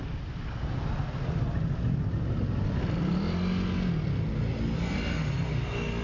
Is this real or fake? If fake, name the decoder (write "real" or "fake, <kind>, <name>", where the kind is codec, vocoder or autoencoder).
real